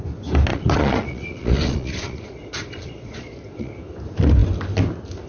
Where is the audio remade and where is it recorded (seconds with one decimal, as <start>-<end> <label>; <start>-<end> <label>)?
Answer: 0.0-0.5 recorded; 0.5-3.7 remade; 3.7-5.3 recorded